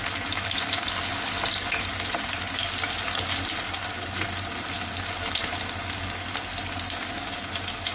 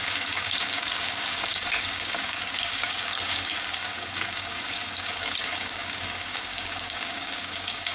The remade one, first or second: second